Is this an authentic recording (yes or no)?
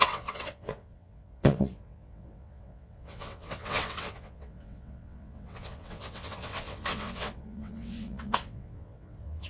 no